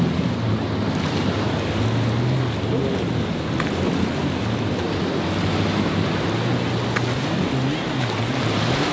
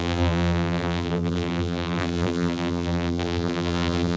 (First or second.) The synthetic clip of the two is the second